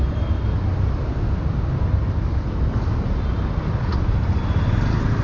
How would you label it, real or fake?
real